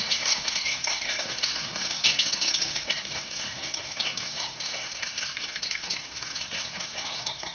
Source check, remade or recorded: remade